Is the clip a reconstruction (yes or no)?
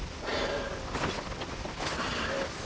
no